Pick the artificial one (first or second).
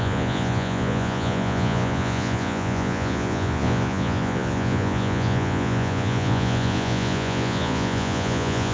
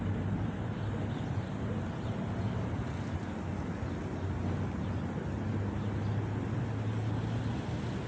first